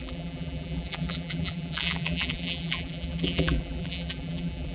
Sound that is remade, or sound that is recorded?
remade